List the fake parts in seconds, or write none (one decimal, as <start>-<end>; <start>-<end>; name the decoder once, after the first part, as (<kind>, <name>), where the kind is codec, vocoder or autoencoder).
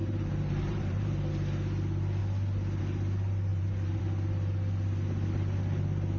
0.0-1.3 (vocoder, BigVGAN v2); 3.5-4.0